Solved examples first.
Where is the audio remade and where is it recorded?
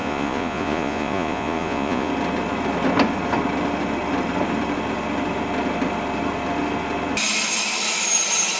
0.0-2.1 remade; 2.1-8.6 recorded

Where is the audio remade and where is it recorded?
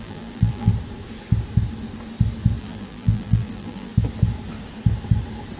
0.0-0.7 remade; 0.7-2.6 recorded; 2.6-3.9 remade; 3.9-5.6 recorded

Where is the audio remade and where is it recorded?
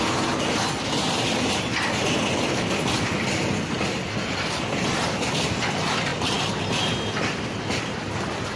0.0-8.6 recorded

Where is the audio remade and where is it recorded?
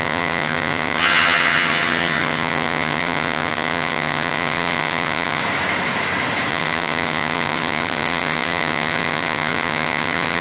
0.0-5.4 remade; 5.4-6.5 recorded; 6.5-10.4 remade